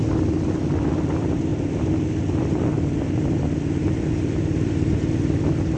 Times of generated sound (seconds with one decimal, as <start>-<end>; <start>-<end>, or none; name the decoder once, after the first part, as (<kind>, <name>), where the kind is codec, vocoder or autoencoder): none

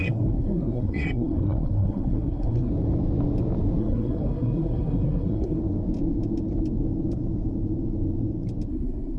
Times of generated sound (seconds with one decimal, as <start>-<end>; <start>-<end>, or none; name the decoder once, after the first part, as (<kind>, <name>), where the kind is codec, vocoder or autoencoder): 0.0-2.7 (codec, SNAC); 3.8-5.6; 8.7-9.2

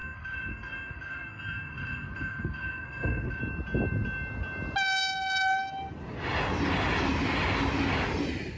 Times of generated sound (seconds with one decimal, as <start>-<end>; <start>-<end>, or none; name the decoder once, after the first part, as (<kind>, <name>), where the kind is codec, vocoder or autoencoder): 0.0-3.4 (codec, SNAC)

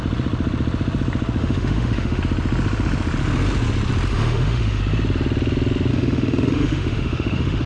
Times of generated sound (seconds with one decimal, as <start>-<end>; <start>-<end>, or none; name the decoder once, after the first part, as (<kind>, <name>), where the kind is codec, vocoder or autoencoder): 1.4-2.2 (autoencoder, DAC-VAE); 4.1-4.8; 5.9-7.7